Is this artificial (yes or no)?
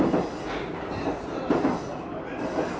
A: no